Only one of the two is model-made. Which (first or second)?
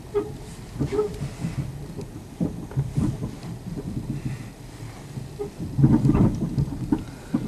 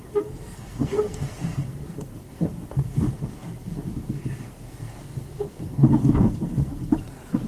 second